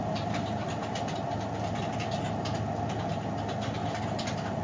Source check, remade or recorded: recorded